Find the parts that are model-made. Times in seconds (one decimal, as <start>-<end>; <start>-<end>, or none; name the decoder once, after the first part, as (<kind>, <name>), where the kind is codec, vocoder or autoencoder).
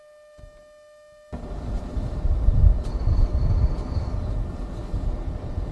none